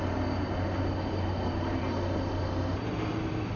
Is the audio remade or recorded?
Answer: recorded